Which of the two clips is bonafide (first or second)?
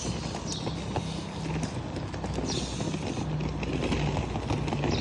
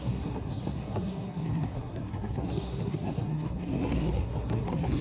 first